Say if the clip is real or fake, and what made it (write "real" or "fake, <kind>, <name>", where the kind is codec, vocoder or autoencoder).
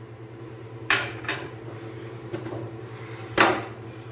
fake, vocoder, BigVGAN v2